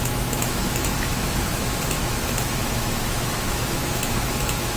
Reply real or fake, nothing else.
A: fake